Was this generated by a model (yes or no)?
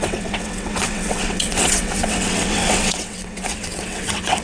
yes